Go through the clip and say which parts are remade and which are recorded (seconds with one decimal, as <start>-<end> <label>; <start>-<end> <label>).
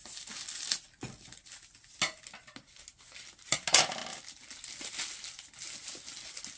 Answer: 0.0-6.6 recorded